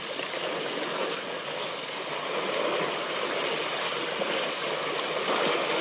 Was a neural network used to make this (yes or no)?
no